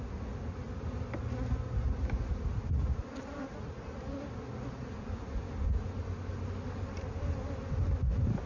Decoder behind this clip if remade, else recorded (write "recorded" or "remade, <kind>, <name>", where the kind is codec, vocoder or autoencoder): recorded